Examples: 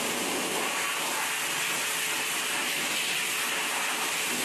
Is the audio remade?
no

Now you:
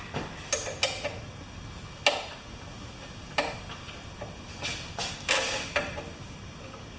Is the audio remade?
no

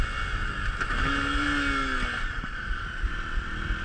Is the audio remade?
no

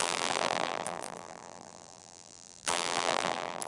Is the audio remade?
yes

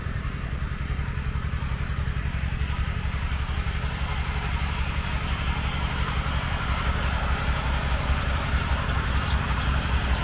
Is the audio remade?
yes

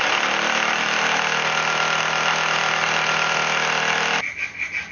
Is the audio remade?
no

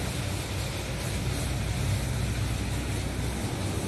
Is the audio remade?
no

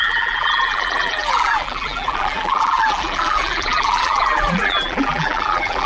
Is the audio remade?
yes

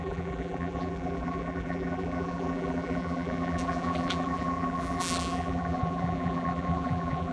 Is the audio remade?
yes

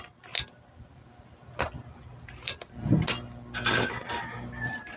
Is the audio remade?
no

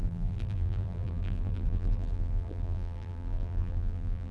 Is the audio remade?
yes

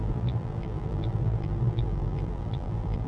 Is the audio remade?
yes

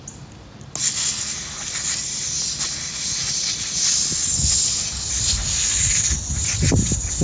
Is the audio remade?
no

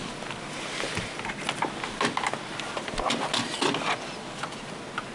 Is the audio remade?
no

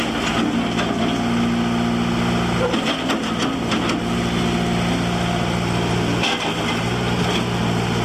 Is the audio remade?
no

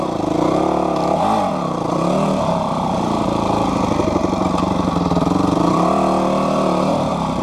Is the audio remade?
yes